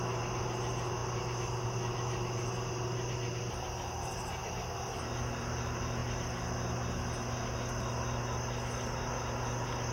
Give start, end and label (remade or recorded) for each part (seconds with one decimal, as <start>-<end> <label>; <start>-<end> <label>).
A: 0.0-9.9 recorded

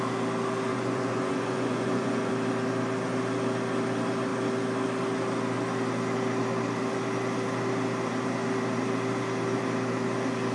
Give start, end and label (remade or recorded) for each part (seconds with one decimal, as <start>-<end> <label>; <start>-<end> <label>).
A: 0.0-0.7 recorded; 0.7-2.3 remade; 2.3-10.5 recorded